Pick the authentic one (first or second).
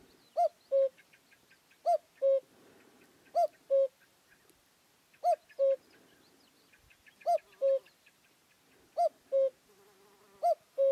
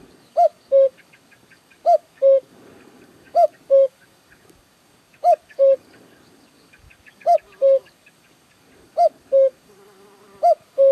first